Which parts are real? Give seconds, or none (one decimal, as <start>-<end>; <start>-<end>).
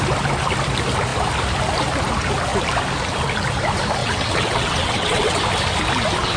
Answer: 0.0-4.0; 5.4-6.4